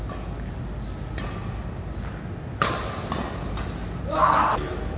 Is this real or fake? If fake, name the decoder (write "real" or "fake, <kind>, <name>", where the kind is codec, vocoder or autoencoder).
real